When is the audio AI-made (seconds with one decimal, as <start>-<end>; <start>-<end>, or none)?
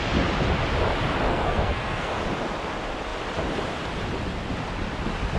1.3-2.2